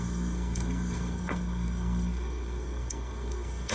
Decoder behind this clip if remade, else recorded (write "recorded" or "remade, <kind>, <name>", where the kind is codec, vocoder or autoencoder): remade, codec, SNAC